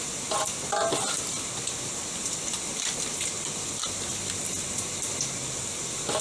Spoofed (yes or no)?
no